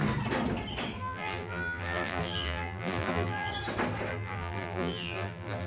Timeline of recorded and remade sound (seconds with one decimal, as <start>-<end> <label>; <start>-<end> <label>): 0.0-1.0 recorded; 1.0-3.5 remade; 3.5-4.1 recorded; 4.1-5.7 remade